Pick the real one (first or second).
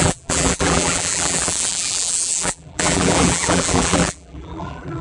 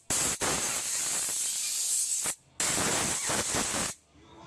second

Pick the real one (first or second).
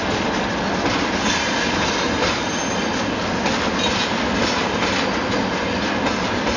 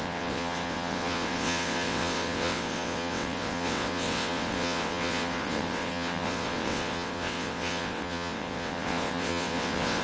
first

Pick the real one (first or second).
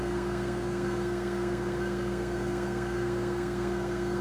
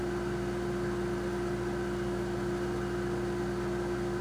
second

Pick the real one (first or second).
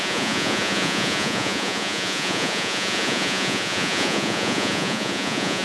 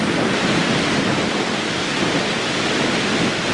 second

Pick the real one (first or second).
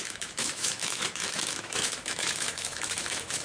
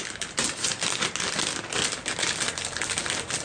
second